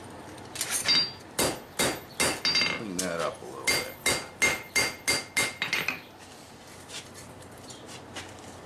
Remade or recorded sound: recorded